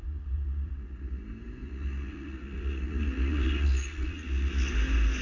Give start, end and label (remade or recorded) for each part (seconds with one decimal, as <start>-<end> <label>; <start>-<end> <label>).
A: 0.0-1.2 remade; 1.2-1.6 recorded; 1.6-4.7 remade; 4.7-5.2 recorded